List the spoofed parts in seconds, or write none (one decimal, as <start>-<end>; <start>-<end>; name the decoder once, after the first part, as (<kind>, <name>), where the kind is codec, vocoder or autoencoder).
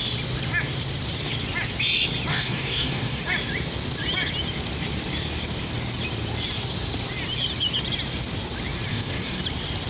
2.3-3.2 (codec, DAC); 8.9-9.4